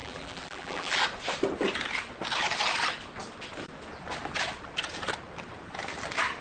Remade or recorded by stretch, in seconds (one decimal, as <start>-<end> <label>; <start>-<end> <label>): 0.0-1.0 remade; 1.0-6.4 recorded